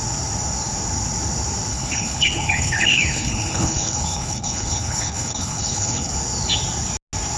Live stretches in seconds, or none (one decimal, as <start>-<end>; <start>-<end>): 0.0-1.7; 6.1-7.4